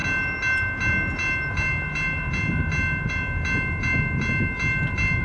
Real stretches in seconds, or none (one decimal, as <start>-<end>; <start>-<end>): 0.0-5.2